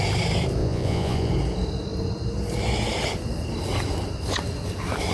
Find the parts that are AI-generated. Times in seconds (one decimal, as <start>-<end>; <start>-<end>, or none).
0.6-1.3

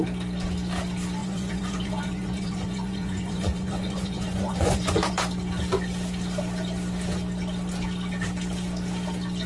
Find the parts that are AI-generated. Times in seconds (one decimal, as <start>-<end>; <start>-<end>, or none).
1.2-5.1

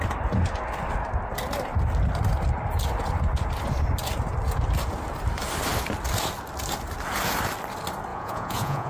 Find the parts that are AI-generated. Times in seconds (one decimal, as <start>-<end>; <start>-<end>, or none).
8.1-8.9

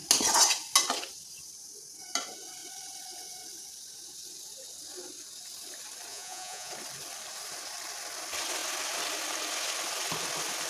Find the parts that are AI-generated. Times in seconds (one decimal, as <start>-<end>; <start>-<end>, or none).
6.1-6.7

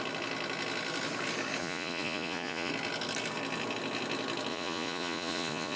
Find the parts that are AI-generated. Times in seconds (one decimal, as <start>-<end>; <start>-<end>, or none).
1.6-2.7; 4.5-5.8

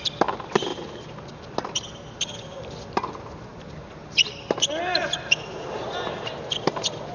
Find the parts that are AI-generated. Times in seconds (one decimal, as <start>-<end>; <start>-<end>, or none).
none